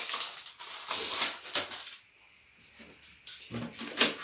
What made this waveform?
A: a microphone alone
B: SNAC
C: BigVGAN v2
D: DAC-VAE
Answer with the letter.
A